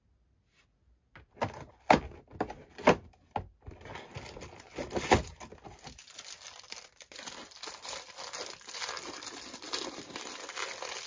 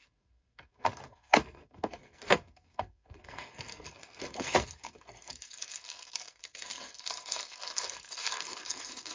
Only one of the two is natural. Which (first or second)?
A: first